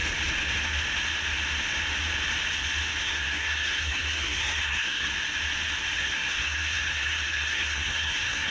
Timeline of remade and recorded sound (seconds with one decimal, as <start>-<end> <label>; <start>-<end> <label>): 0.0-3.0 recorded; 3.0-5.1 remade; 5.1-6.0 recorded; 6.0-8.5 remade